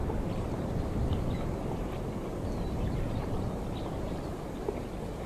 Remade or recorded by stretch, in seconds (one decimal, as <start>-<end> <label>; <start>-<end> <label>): 0.0-5.3 recorded